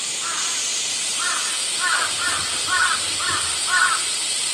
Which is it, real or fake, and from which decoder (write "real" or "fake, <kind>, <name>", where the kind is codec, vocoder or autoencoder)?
real